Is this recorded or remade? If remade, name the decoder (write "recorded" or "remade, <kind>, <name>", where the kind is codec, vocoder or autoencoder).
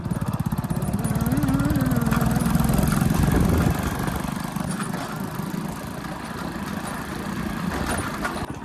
recorded